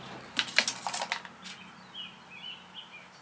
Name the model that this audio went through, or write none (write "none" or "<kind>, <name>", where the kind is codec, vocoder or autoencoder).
none